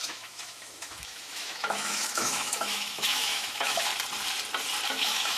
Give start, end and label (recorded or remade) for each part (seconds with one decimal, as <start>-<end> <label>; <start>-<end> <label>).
0.0-3.9 remade; 3.9-4.9 recorded; 4.9-5.4 remade